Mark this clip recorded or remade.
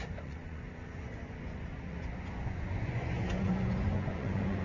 remade